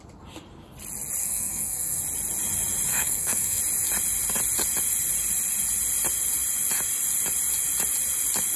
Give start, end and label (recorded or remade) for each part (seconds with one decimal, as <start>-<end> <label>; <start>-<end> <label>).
0.0-1.2 recorded; 1.2-2.0 remade; 2.0-2.9 recorded; 2.9-3.6 remade; 3.6-8.6 recorded